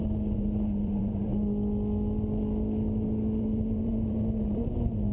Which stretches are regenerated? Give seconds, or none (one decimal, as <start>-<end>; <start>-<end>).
0.0-1.3; 3.4-5.1